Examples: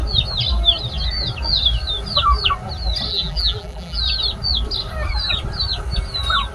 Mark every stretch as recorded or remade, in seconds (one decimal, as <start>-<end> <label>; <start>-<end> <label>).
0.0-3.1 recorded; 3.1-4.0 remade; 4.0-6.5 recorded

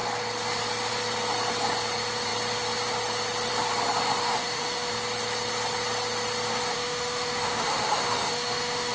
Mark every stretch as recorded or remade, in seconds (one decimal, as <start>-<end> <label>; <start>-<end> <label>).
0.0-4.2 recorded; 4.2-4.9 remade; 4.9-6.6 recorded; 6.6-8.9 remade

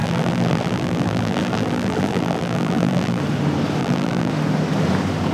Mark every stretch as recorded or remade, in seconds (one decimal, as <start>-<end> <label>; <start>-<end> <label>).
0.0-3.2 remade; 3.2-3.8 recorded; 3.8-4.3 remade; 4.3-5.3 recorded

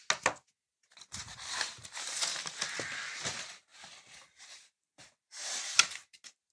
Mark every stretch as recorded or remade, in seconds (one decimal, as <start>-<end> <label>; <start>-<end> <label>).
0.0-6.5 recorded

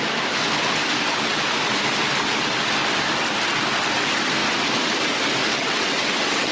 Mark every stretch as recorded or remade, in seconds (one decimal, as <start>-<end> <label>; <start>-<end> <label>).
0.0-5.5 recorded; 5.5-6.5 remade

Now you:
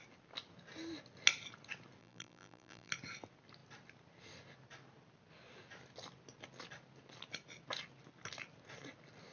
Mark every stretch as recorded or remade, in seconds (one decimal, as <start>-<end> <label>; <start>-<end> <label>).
0.0-2.0 recorded; 2.0-2.9 remade; 2.9-9.3 recorded